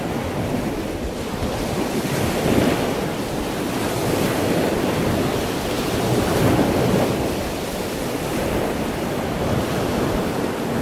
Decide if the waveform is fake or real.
real